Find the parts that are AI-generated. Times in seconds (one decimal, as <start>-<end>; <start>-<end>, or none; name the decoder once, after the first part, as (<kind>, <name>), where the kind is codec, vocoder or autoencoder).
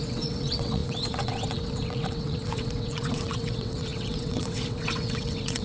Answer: 0.0-5.6 (vocoder, WaveNeXt)